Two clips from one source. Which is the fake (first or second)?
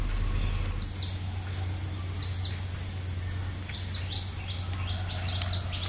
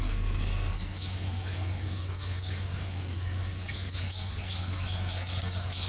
second